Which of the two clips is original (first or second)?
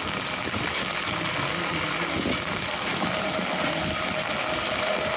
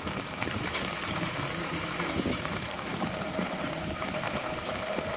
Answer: first